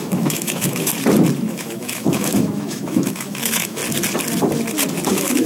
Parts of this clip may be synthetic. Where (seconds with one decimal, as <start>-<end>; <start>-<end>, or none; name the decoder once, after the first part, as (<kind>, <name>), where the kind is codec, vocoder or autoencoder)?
0.0-0.9 (autoencoder, DAC-VAE); 1.5-3.8; 5.1-5.5